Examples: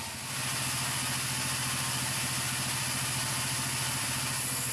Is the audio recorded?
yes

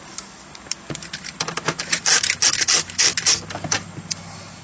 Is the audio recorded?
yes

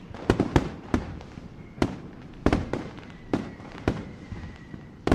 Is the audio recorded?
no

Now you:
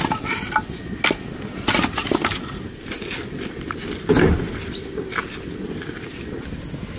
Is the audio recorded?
yes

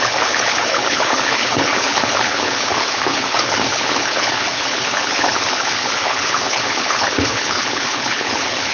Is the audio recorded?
no